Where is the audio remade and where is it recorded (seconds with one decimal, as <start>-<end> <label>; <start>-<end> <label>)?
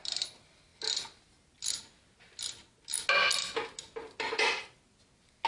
0.0-5.5 recorded